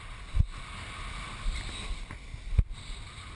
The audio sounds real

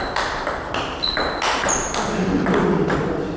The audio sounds real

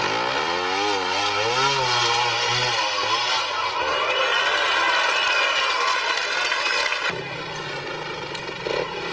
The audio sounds real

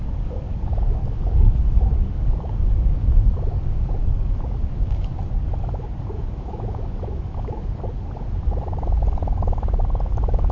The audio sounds fake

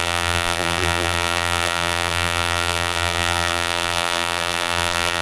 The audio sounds fake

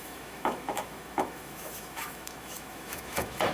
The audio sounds fake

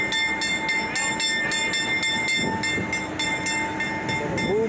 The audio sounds real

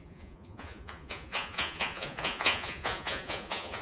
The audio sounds fake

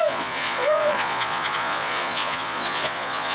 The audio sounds fake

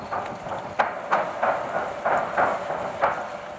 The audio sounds real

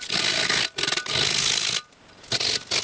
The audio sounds real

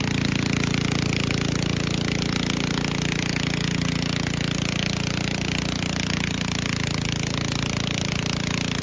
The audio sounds real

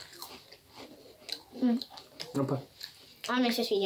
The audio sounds real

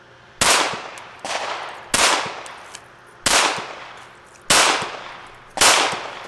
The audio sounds real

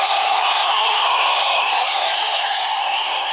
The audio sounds fake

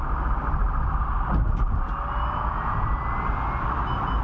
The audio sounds real